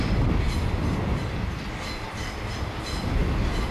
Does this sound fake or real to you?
real